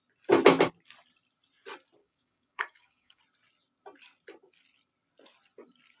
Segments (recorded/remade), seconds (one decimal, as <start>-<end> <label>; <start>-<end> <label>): 0.0-2.0 recorded; 2.0-3.2 remade; 3.2-6.0 recorded